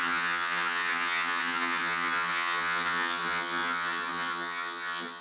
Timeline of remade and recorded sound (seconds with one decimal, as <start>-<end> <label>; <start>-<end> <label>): 0.0-5.2 remade